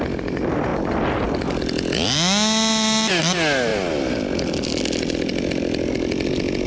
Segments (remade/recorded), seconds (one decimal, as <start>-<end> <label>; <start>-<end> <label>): 0.0-6.7 recorded